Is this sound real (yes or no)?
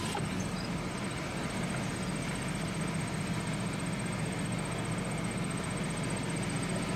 yes